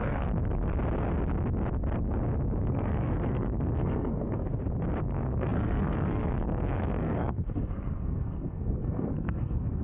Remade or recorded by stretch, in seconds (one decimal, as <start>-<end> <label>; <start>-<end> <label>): 0.0-0.4 remade; 0.4-2.6 recorded; 2.6-4.4 remade; 4.4-5.0 recorded; 5.0-9.8 remade

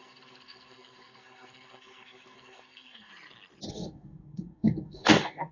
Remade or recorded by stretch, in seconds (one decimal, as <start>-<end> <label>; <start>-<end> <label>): 0.0-3.1 remade; 3.1-3.7 recorded; 3.7-5.5 remade